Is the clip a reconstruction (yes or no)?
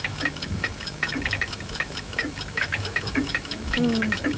yes